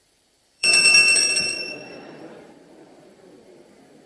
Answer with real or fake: fake